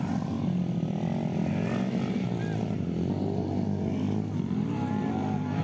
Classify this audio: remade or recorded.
recorded